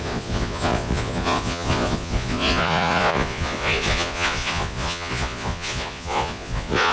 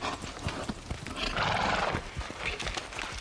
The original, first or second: second